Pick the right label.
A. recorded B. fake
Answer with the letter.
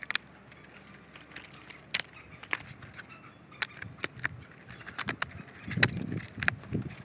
A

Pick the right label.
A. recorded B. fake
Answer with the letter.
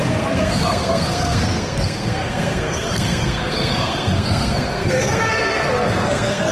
B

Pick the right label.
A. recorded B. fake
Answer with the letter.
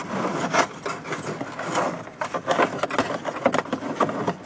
A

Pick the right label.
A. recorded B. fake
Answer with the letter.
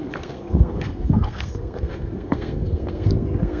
B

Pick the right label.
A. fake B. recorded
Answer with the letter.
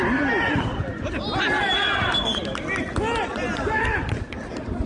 B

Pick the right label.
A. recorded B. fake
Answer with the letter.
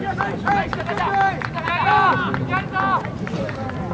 A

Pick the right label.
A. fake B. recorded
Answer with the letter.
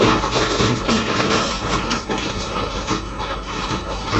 A